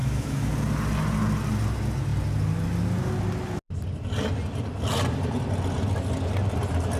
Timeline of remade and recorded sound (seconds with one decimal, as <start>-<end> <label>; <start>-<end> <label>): 0.0-0.5 remade; 0.5-7.0 recorded